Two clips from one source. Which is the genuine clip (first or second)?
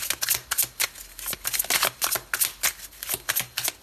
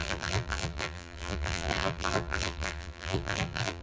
first